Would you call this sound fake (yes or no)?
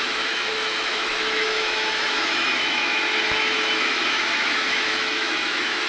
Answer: yes